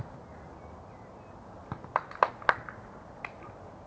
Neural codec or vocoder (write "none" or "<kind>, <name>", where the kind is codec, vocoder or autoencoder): none